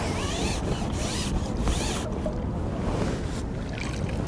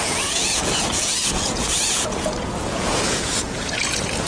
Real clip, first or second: first